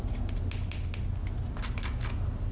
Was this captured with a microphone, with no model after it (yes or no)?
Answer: yes